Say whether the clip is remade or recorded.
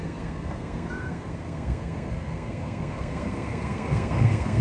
remade